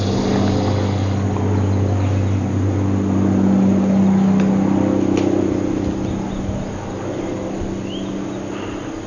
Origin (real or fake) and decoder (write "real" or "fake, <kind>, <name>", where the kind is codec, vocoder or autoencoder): real